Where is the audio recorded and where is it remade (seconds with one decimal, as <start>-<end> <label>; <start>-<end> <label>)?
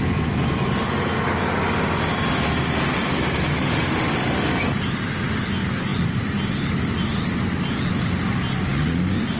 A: 0.0-3.5 recorded; 3.5-4.4 remade; 4.4-9.4 recorded